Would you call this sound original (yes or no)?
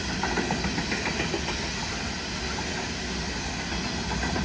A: yes